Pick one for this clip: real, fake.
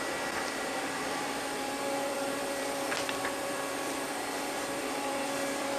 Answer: fake